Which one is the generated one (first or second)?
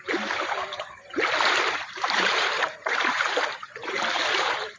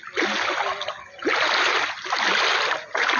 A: first